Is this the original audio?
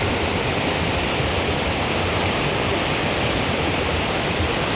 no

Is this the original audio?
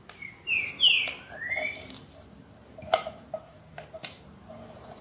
no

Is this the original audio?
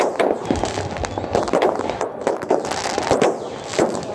yes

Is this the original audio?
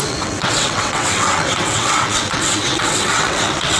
no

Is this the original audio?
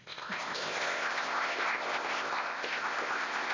no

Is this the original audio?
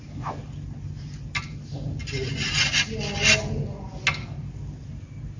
yes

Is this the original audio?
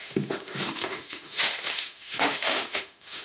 no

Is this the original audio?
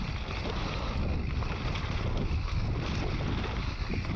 yes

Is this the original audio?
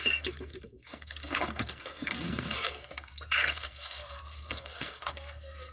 no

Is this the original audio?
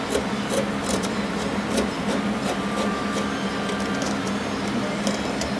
yes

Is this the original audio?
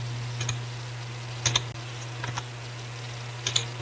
yes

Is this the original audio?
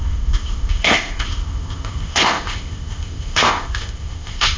no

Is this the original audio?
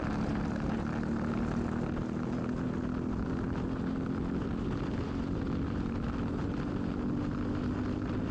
yes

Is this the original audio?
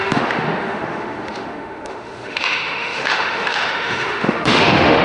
no